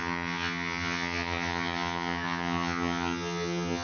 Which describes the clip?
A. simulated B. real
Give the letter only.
A